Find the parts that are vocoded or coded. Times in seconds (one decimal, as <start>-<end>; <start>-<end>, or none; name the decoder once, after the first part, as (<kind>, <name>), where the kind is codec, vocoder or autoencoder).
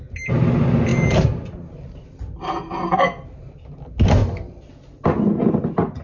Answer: 0.9-1.7 (vocoder, BigVGAN v2); 4.2-4.7